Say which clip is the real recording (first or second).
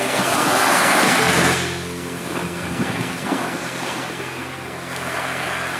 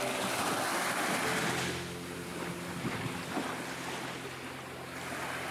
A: second